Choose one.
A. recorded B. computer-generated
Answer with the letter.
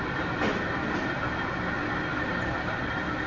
A